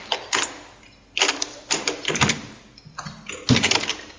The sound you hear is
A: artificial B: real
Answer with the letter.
B